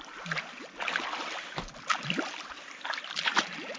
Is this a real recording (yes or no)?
yes